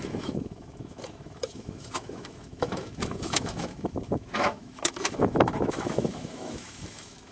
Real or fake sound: fake